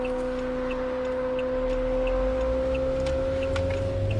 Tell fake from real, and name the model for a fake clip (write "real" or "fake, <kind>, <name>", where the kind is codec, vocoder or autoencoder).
real